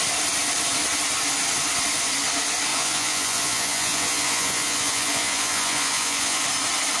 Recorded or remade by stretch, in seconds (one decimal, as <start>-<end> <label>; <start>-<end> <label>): 0.0-2.7 recorded; 2.7-6.4 remade; 6.4-7.0 recorded